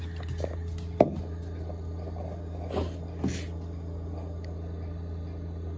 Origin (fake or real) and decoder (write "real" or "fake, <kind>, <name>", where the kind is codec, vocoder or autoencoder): real